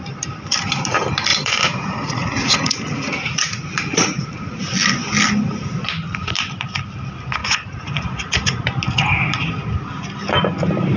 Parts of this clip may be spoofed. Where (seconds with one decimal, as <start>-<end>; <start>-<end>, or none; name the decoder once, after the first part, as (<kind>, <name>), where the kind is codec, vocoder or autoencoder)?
1.3-4.6 (vocoder, Vocos); 7.4-8.6